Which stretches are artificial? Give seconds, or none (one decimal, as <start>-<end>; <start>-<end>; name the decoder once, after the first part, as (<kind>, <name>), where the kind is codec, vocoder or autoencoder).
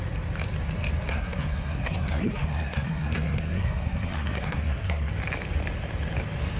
1.1-5.1 (codec, SNAC)